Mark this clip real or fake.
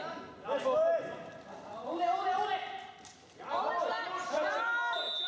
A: real